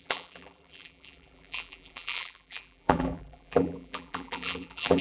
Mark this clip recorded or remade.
remade